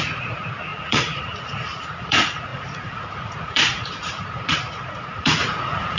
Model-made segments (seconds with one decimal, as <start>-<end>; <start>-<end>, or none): 0.0-6.0